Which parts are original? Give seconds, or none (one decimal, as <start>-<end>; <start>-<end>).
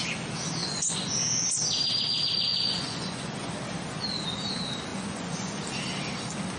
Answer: 0.0-0.6; 1.1-2.5; 3.5-4.9; 5.6-6.6